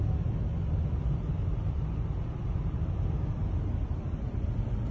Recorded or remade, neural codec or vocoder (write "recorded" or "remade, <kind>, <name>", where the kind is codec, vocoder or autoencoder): remade, vocoder, BigVGAN v2